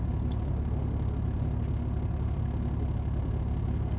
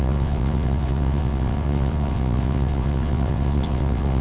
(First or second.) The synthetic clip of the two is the second